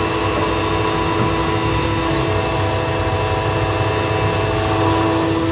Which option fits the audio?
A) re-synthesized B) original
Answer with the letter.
B